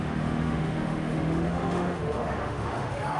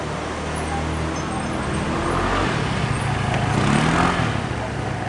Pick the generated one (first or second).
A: first